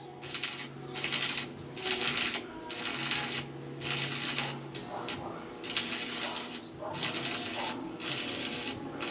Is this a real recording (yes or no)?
yes